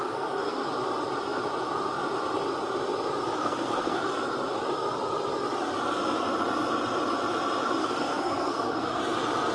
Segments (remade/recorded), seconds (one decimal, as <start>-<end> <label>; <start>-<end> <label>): 0.0-0.7 remade; 0.7-3.4 recorded; 3.4-4.0 remade; 4.0-7.8 recorded; 7.8-9.0 remade; 9.0-9.5 recorded